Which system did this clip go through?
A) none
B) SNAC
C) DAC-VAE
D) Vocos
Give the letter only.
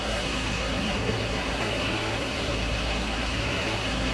B